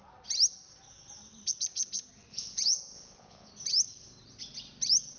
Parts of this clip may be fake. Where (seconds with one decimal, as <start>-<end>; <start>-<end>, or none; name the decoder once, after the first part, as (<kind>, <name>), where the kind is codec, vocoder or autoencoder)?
2.3-3.5 (vocoder, Vocos)